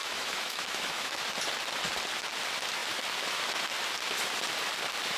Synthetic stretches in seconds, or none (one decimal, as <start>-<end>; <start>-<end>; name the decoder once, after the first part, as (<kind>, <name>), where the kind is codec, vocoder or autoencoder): 0.0-1.2 (autoencoder, DAC-VAE)